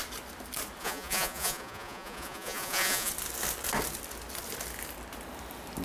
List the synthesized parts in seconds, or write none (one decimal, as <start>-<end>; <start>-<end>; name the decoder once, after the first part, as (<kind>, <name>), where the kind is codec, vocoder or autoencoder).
0.8-3.1 (vocoder, Vocos)